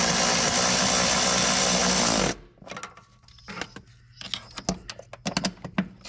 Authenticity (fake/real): real